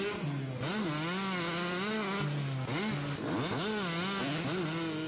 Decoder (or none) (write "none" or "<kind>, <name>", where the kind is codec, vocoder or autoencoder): none